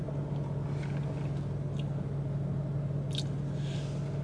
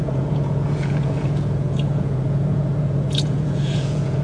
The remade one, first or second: second